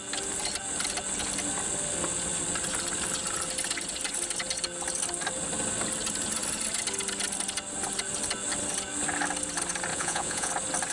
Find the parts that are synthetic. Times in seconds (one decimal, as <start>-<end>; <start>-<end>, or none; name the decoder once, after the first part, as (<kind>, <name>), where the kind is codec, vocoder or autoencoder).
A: 9.9-10.5 (vocoder, Vocos)